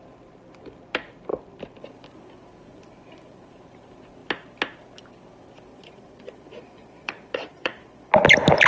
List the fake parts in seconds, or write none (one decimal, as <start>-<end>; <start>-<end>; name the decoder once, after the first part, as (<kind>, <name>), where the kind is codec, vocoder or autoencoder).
5.7-8.1 (vocoder, Vocos)